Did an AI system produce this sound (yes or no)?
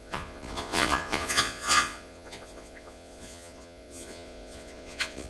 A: yes